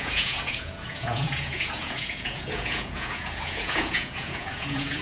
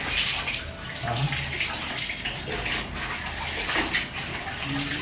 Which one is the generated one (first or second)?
first